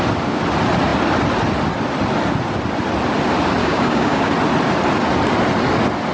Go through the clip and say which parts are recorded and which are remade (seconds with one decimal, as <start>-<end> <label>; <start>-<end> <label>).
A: 0.0-3.6 recorded; 3.6-4.3 remade; 4.3-6.1 recorded